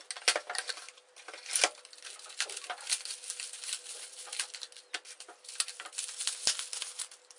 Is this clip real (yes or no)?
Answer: yes